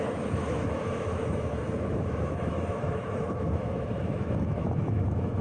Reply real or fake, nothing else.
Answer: fake